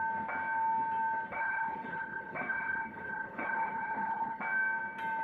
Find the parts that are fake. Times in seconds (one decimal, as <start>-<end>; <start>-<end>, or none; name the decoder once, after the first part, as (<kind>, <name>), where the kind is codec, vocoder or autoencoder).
1.3-4.4 (codec, HILCodec)